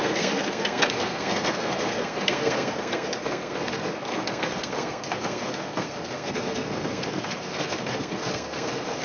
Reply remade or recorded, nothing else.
remade